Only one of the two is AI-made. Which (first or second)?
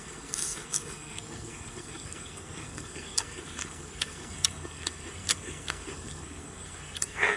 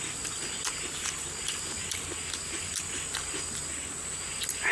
first